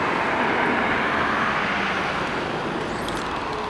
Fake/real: real